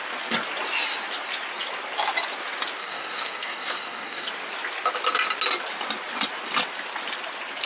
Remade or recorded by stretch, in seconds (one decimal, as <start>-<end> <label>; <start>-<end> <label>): 0.0-2.8 recorded; 2.8-4.3 remade; 4.3-7.7 recorded